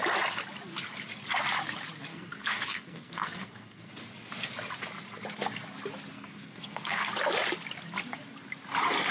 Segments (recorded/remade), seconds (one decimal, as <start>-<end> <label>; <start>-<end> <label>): 0.0-2.1 recorded; 2.1-3.9 remade; 3.9-6.1 recorded; 6.1-7.1 remade; 7.1-9.1 recorded